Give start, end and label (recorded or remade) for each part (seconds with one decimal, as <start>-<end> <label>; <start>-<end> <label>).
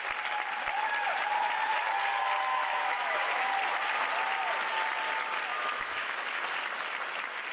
0.0-2.5 recorded; 2.5-3.5 remade; 3.5-5.5 recorded; 5.5-6.4 remade; 6.4-7.5 recorded